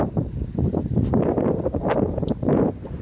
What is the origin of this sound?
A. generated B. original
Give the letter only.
B